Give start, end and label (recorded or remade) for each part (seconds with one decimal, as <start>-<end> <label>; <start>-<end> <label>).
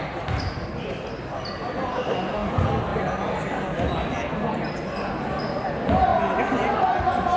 0.0-1.9 recorded; 1.9-2.5 remade; 2.5-7.4 recorded